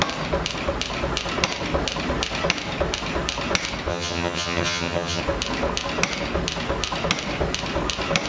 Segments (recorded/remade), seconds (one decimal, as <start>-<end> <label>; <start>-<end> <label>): 0.0-3.9 recorded; 3.9-5.2 remade; 5.2-8.3 recorded